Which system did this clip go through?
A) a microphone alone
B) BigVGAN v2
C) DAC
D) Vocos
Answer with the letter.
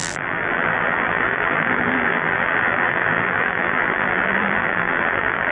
B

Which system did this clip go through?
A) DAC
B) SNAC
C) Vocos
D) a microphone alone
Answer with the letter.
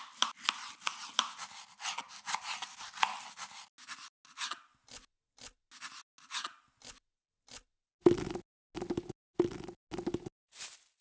D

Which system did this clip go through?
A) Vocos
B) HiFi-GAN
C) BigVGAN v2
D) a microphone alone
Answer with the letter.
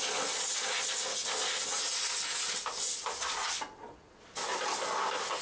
D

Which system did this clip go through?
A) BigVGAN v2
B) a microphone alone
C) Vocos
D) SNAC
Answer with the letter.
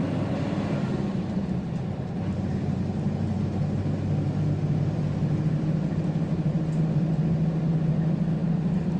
B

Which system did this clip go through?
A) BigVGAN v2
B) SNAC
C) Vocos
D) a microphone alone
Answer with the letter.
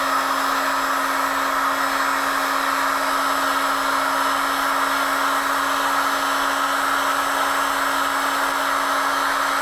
D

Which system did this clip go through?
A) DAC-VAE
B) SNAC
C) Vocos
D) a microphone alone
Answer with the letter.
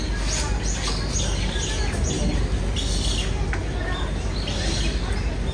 D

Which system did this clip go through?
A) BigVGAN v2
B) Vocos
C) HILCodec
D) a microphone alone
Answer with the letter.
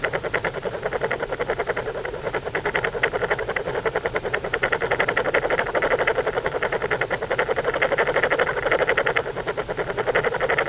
D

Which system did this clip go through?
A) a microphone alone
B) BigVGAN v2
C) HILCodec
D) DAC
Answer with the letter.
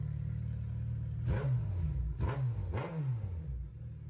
A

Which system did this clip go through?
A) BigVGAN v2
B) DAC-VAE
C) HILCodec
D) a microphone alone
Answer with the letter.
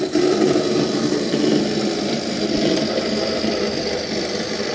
A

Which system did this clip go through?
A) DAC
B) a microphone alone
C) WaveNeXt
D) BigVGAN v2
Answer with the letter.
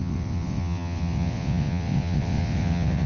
C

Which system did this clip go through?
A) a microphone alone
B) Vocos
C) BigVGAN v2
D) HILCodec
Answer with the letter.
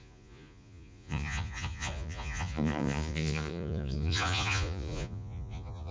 B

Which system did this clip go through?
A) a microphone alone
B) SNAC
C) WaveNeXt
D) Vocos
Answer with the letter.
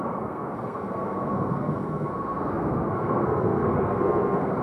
B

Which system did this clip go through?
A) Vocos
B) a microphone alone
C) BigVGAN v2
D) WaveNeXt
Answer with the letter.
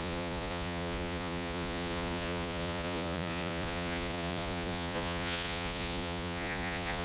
A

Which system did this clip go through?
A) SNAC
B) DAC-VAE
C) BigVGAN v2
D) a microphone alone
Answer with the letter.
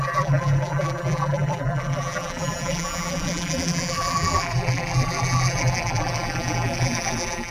C